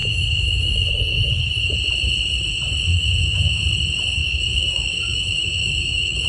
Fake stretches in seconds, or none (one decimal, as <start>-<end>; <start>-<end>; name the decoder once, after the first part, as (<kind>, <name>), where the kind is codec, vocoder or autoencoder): 0.0-0.9 (autoencoder, DAC-VAE); 2.9-3.6; 4.2-6.3

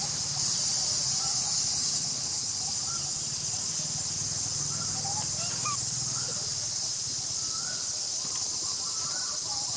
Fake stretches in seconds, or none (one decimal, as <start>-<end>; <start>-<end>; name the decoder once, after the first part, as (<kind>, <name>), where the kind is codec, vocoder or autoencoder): 1.3-2.6 (codec, HILCodec)

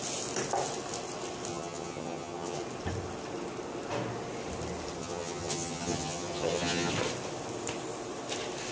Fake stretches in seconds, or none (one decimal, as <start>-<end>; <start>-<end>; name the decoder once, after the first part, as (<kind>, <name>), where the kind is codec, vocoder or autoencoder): 1.5-2.6 (vocoder, HiFi-GAN); 5.0-6.9

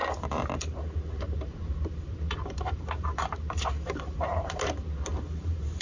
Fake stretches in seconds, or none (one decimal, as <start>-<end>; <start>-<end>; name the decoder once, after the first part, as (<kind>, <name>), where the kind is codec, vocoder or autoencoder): 0.0-5.8 (vocoder, BigVGAN v2)

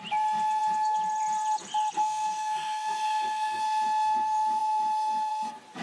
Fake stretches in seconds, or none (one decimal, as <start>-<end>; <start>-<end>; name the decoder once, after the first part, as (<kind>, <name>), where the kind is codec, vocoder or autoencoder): 2.0-3.6 (codec, SNAC)